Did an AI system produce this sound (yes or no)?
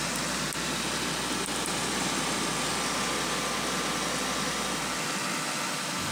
no